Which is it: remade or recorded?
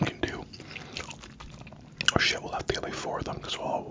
recorded